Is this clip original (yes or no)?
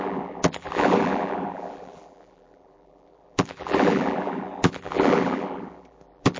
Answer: no